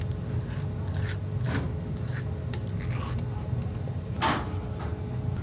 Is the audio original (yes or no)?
yes